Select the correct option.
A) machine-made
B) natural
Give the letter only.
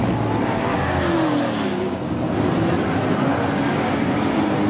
B